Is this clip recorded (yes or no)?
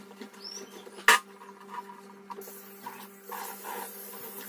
yes